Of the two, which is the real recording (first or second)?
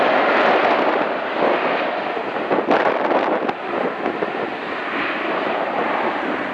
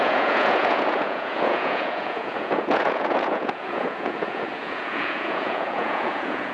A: first